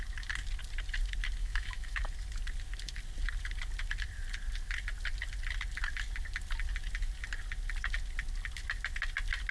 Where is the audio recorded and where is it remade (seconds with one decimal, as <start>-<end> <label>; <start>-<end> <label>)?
0.0-1.4 recorded; 1.4-2.0 remade; 2.0-9.5 recorded